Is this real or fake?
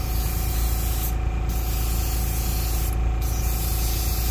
real